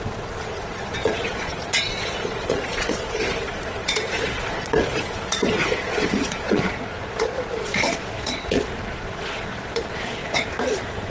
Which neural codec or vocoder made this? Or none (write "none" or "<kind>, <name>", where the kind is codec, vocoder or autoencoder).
vocoder, Vocos